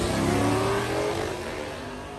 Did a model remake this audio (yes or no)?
no